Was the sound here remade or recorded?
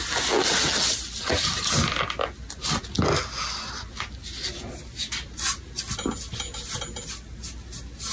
recorded